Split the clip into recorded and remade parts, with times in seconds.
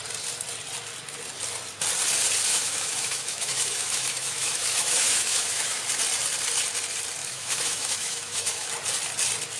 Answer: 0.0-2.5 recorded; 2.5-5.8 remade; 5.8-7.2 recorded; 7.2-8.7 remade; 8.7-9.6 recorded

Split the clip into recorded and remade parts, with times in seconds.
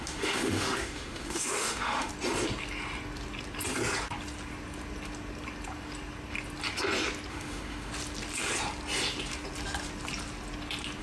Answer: 0.0-2.1 remade; 2.1-7.3 recorded; 7.3-7.9 remade; 7.9-11.0 recorded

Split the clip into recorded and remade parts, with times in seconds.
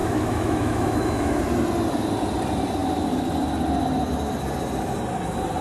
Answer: 0.0-1.4 remade; 1.4-5.6 recorded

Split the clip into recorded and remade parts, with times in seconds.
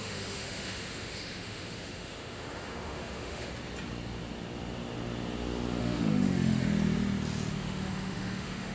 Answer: 0.0-3.5 remade; 3.5-5.8 recorded; 5.8-6.6 remade; 6.6-7.5 recorded; 7.5-8.7 remade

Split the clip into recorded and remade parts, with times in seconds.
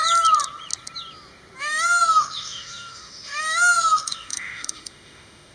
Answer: 0.0-1.6 recorded; 1.6-5.5 remade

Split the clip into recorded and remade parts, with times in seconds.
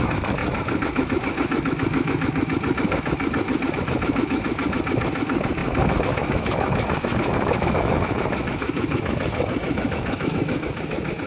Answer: 0.0-11.3 remade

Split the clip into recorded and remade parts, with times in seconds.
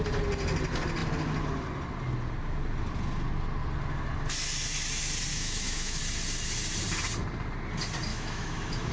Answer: 0.0-5.3 recorded; 5.3-6.0 remade; 6.0-8.1 recorded; 8.1-8.9 remade